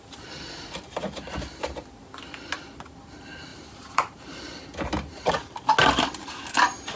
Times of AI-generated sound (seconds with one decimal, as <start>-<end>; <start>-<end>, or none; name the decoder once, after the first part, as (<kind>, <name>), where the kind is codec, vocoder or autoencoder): 3.5-5.3 (vocoder, BigVGAN v2)